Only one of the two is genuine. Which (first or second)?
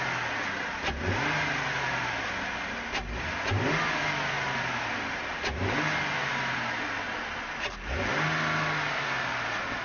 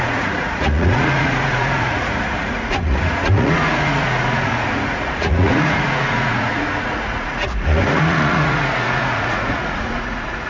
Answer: first